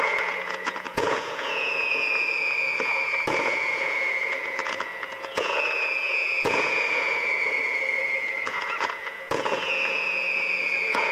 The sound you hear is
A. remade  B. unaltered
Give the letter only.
A